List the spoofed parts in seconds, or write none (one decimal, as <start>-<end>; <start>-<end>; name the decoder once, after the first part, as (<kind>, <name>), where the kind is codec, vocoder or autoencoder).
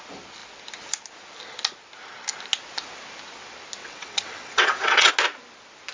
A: 3.8-5.1 (vocoder, WaveNeXt)